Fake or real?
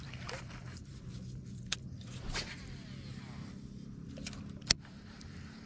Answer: fake